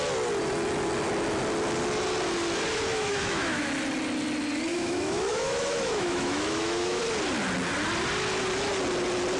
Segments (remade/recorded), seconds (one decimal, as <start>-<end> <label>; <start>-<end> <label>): 0.0-2.9 recorded; 2.9-3.6 remade; 3.6-4.7 recorded; 4.7-7.0 remade; 7.0-9.4 recorded